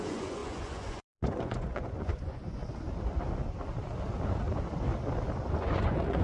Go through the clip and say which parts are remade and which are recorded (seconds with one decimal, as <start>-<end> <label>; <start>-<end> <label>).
0.0-2.6 remade; 2.6-5.5 recorded; 5.5-6.2 remade